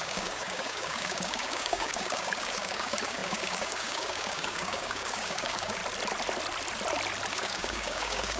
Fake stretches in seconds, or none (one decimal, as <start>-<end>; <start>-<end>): 0.0-5.8; 7.3-8.4

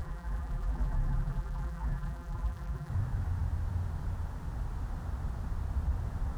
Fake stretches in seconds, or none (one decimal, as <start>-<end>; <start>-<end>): 0.0-2.9